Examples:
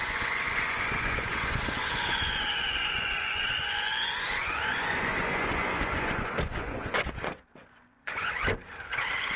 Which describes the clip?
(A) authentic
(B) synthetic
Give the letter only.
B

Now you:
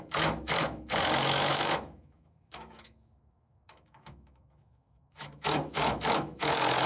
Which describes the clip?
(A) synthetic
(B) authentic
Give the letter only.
A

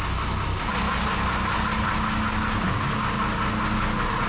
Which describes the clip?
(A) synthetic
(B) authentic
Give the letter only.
B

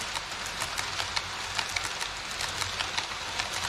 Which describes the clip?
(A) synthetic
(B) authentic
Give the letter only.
B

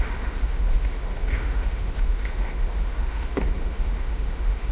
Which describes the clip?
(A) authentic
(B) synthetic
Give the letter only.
B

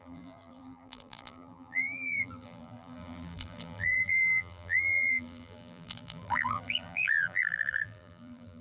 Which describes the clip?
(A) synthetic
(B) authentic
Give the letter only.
A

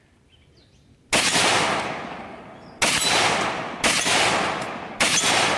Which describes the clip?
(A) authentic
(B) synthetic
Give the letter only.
A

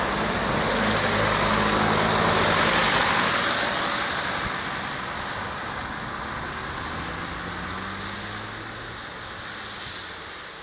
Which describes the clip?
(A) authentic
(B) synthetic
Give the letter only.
A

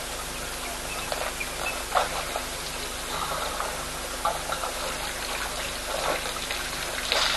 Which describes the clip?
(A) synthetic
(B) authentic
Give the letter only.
B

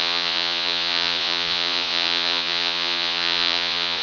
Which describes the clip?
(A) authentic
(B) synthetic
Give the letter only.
B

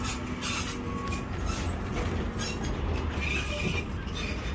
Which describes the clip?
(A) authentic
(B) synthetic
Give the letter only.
A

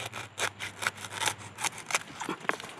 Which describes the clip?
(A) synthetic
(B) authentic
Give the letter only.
B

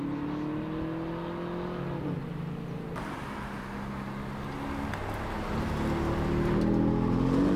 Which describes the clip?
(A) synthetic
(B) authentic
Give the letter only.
B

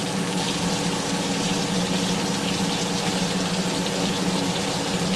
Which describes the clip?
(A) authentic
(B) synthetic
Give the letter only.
A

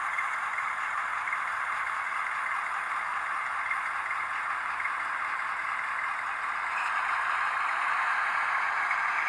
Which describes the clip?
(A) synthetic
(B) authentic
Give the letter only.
A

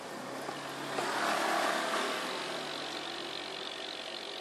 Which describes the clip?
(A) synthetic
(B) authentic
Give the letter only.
B